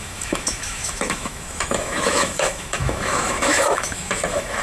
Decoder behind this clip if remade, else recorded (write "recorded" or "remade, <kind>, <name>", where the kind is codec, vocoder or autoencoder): remade, autoencoder, DAC-VAE